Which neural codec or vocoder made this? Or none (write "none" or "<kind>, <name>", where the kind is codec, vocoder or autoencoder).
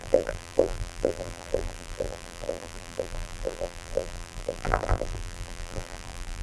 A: vocoder, BigVGAN v2